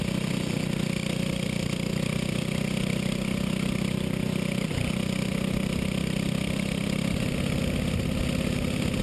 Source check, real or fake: real